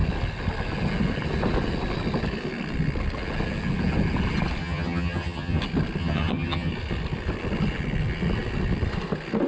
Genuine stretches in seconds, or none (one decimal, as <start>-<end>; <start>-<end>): 0.0-4.6; 5.6-6.0; 6.7-9.5